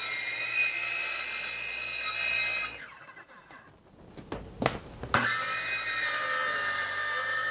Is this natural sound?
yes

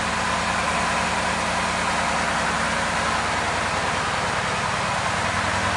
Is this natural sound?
yes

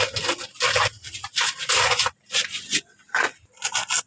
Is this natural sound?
yes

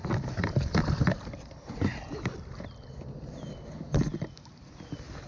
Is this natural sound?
yes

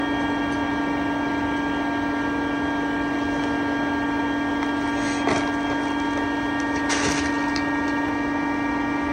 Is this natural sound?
yes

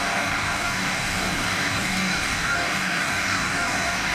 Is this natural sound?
no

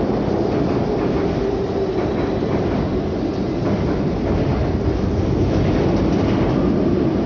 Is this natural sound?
yes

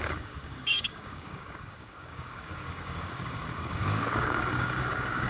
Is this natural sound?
no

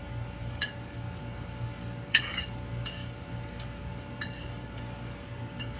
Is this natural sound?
no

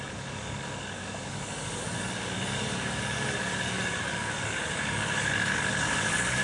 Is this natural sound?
no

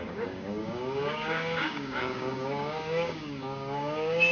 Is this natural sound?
no